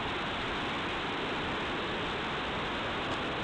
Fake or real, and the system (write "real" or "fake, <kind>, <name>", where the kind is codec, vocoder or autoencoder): real